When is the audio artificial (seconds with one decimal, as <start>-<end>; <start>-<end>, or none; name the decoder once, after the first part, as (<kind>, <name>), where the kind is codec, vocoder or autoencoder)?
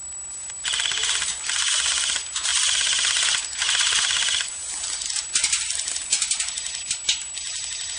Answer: none